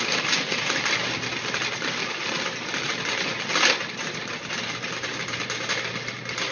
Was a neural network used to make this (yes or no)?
no